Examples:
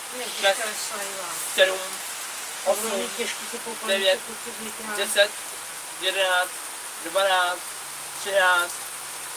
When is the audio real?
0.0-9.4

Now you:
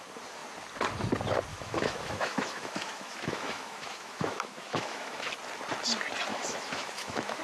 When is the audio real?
0.0-1.5; 5.3-6.3

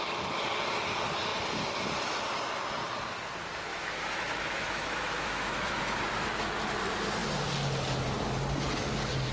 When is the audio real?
0.0-3.7; 6.0-9.3

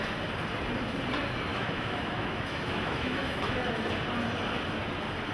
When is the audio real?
0.0-1.5; 3.7-5.3

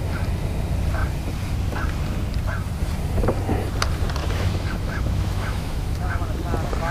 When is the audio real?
0.0-4.2; 6.2-6.9

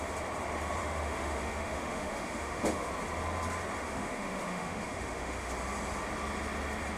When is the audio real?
0.0-0.8; 2.9-3.8; 5.5-7.0

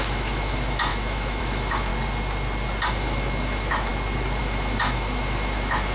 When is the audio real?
1.9-2.9; 3.9-4.4

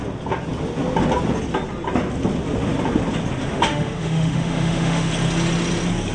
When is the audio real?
0.0-3.5; 5.1-6.1